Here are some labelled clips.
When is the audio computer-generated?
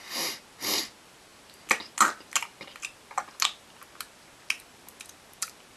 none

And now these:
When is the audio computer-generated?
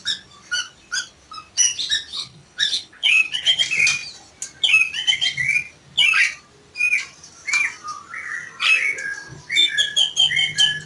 2.1-3.6 (codec, HILCodec)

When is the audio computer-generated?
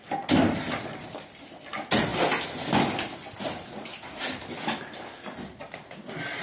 none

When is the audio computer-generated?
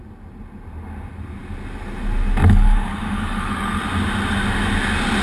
2.4-3.8 (codec, DAC)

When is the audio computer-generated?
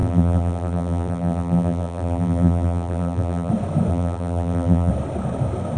0.0-3.5 (vocoder, BigVGAN v2); 3.9-4.9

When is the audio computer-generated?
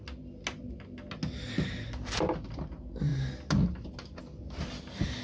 none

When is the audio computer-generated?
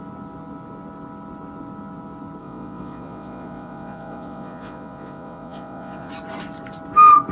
2.4-6.1 (vocoder, Vocos)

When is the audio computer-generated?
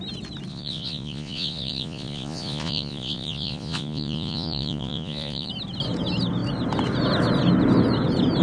0.5-5.5 (vocoder, Vocos)